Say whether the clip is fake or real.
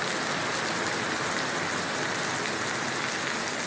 real